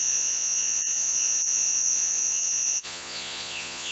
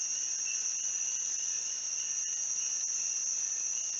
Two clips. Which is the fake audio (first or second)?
first